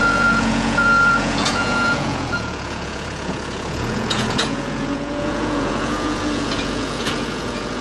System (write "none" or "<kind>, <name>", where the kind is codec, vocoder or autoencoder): vocoder, Vocos